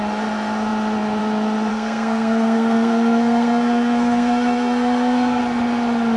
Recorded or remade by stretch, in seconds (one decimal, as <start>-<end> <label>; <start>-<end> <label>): 0.0-1.7 recorded; 1.7-5.4 remade; 5.4-6.2 recorded